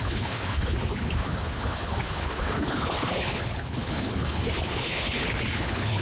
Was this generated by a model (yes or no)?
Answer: yes